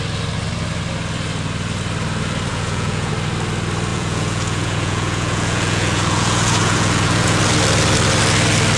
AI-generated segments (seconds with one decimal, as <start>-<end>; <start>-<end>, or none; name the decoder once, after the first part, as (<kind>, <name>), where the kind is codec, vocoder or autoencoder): 2.5-3.1 (vocoder, Vocos); 3.9-7.4

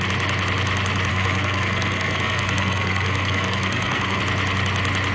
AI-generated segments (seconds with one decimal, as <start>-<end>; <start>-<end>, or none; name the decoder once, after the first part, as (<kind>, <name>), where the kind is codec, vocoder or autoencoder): 1.1-4.2 (codec, SNAC)

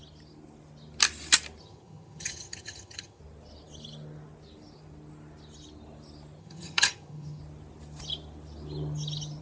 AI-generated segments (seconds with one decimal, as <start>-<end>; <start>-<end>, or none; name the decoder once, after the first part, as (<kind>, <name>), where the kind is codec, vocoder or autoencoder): 1.6-3.2 (vocoder, HiFi-GAN); 6.4-7.4